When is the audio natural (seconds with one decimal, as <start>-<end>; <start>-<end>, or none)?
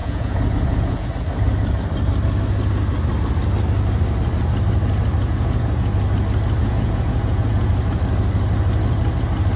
1.1-5.2; 5.9-6.6; 7.7-9.6